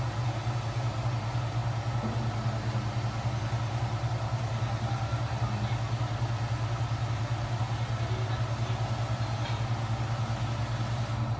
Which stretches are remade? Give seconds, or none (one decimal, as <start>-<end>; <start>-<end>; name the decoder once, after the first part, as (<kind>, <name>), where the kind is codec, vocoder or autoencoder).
none